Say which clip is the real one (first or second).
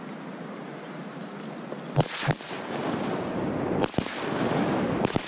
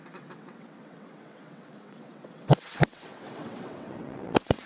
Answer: first